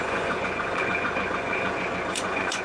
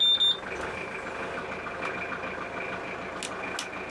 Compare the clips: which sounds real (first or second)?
second